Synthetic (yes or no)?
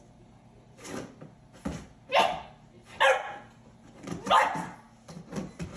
no